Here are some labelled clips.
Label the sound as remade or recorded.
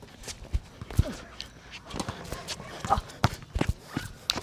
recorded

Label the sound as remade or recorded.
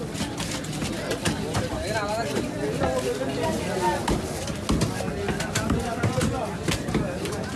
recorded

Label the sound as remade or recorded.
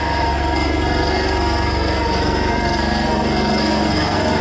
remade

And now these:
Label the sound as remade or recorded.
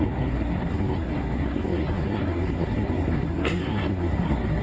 remade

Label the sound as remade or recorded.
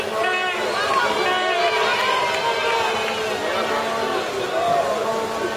recorded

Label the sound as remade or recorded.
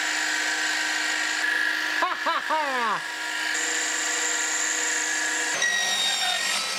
recorded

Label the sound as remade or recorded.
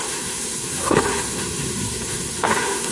remade